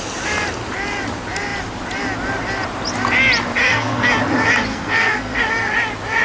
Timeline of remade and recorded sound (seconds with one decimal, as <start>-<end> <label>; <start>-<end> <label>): 0.0-3.6 recorded; 3.6-4.1 remade; 4.1-4.7 recorded; 4.7-5.4 remade; 5.4-6.2 recorded